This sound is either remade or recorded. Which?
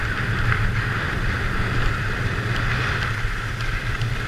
recorded